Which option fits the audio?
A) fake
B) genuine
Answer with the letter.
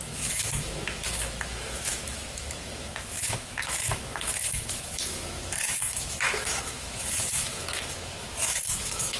A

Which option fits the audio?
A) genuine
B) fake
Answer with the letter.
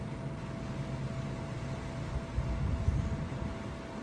A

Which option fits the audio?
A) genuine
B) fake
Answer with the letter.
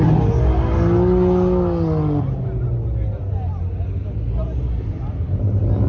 A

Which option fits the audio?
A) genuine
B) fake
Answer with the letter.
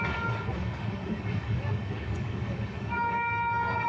B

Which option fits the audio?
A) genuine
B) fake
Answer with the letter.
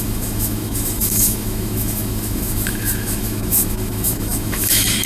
B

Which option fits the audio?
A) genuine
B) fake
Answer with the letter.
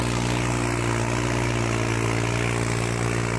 A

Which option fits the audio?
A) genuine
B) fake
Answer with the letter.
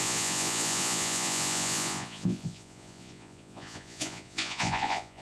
B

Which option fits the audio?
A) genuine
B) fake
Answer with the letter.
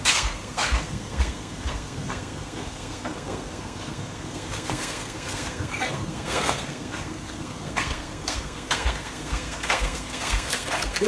B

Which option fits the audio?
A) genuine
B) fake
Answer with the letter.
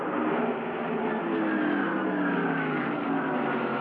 A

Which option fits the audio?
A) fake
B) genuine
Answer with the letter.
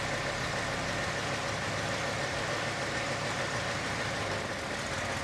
B